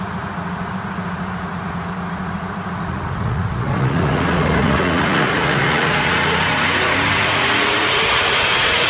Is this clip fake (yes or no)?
yes